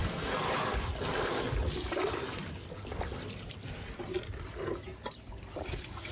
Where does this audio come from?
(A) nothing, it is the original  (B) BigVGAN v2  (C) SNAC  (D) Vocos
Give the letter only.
A